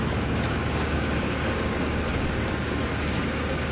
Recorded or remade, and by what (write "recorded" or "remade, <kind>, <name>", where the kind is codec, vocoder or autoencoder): remade, codec, DAC